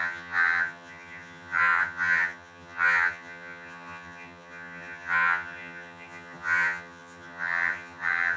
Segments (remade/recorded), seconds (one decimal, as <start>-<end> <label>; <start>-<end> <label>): 0.0-8.4 remade